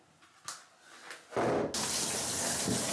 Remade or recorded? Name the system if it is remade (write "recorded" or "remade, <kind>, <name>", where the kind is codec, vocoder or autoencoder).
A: recorded